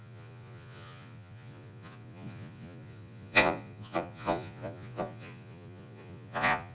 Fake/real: fake